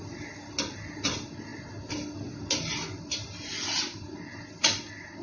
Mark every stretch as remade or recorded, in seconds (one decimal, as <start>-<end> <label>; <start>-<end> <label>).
0.0-5.2 recorded